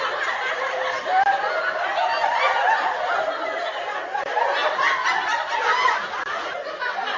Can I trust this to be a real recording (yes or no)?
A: yes